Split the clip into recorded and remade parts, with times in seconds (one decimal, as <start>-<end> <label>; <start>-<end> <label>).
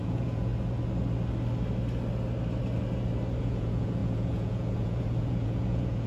0.0-0.5 remade; 0.5-3.4 recorded; 3.4-6.1 remade